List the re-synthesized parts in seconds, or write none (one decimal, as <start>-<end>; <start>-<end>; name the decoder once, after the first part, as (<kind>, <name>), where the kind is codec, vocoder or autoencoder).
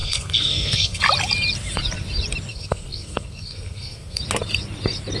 0.0-1.0 (codec, SNAC); 2.5-4.2